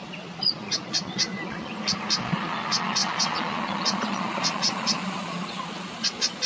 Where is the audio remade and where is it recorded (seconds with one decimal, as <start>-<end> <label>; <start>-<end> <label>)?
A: 0.0-1.7 remade; 1.7-2.2 recorded; 2.2-6.5 remade